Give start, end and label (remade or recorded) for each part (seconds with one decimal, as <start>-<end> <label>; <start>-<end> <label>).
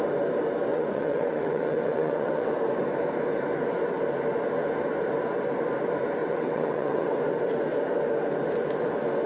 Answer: 0.0-0.7 recorded; 0.7-2.6 remade; 2.6-6.2 recorded; 6.2-7.1 remade; 7.1-9.3 recorded